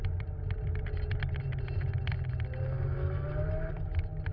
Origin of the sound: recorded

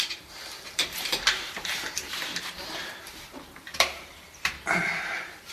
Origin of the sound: remade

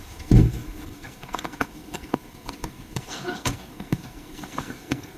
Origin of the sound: remade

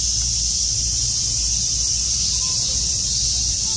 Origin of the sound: recorded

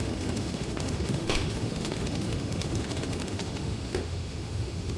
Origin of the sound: remade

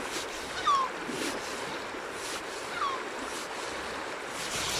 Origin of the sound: recorded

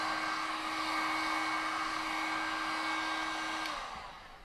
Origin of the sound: recorded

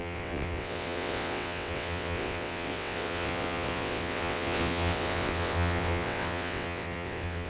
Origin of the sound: remade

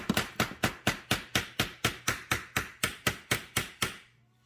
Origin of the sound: recorded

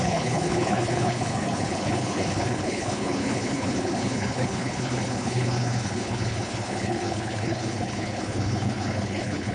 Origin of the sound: remade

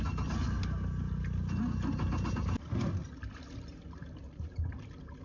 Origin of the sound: recorded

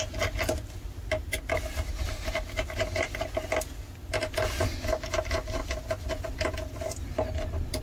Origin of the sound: recorded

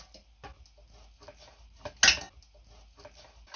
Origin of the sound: recorded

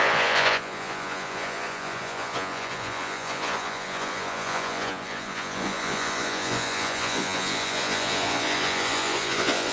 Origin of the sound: remade